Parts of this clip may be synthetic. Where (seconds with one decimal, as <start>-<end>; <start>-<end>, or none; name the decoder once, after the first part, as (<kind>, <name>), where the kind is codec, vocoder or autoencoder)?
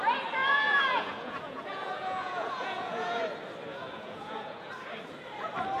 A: 0.4-3.2 (vocoder, Vocos); 3.7-4.7